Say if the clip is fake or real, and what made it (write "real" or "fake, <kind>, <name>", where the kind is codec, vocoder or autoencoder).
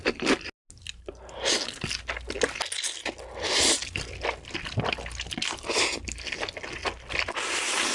real